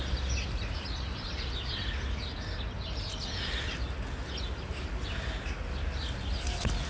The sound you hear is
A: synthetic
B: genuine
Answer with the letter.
B